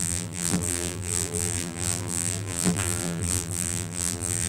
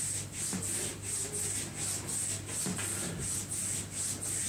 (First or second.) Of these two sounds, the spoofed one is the first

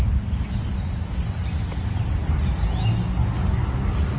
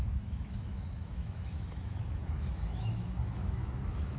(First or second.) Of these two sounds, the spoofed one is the second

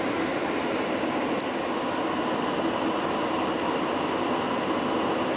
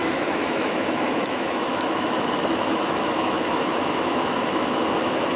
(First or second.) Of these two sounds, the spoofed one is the second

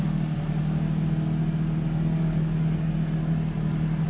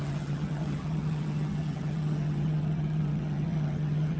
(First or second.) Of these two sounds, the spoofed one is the second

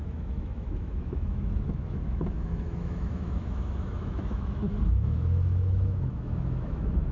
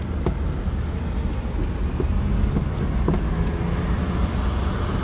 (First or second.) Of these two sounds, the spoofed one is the first